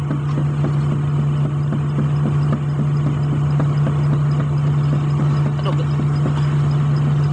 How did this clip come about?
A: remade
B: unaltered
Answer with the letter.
B